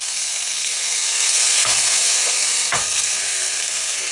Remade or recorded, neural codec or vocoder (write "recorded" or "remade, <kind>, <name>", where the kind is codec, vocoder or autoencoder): remade, codec, SNAC